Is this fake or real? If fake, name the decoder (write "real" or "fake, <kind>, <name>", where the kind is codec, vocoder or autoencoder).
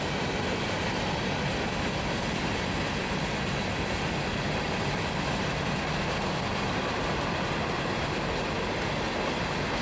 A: real